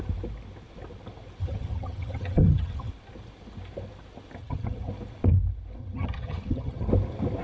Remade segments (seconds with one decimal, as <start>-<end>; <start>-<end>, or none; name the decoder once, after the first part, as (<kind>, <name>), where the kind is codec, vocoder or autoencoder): 1.4-2.9 (vocoder, HiFi-GAN); 4.4-4.9; 5.8-6.9